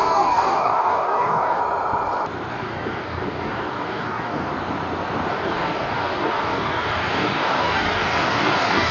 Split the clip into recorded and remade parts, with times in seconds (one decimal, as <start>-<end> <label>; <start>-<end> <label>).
0.0-1.6 remade; 1.6-2.5 recorded; 2.5-4.5 remade; 4.5-5.3 recorded; 5.3-8.9 remade